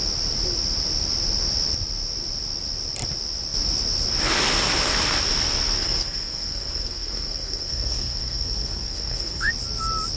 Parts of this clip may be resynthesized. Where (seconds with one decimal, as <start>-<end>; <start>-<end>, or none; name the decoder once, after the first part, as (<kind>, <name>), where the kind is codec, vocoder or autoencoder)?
5.8-9.5 (codec, SNAC)